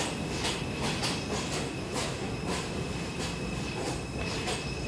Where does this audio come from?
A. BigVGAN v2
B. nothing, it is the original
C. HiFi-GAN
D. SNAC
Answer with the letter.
B